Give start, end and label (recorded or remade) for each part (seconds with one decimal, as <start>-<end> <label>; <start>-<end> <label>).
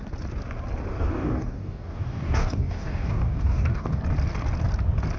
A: 0.0-0.9 recorded; 0.9-4.0 remade; 4.0-5.2 recorded